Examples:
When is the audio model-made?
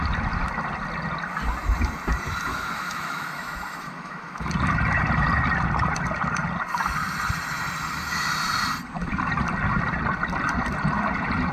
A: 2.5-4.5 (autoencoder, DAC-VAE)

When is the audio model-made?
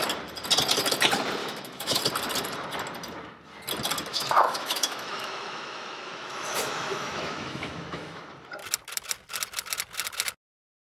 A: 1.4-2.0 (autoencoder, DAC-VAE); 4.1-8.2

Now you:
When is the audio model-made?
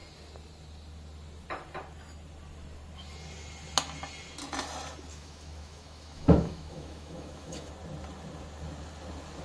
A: 5.1-7.7 (autoencoder, DAC-VAE)